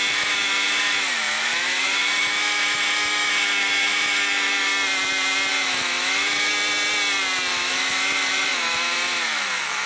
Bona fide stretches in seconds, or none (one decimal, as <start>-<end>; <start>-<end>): 4.7-5.5; 6.5-7.5